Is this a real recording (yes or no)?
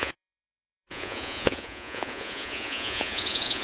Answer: no